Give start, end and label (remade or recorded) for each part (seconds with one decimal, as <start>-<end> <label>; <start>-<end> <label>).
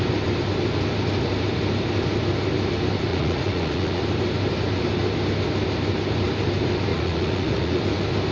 0.0-3.1 recorded; 3.1-4.0 remade; 4.0-6.9 recorded; 6.9-7.8 remade; 7.8-8.3 recorded